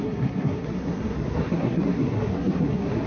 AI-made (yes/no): yes